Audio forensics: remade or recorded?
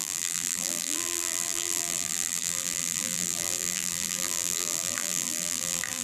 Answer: remade